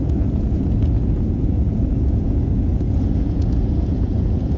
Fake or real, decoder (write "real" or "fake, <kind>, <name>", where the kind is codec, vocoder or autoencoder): fake, vocoder, Vocos